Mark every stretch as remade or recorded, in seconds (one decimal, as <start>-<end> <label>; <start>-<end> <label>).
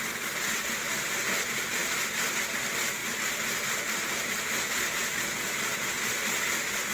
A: 0.0-3.0 recorded; 3.0-4.3 remade; 4.3-6.9 recorded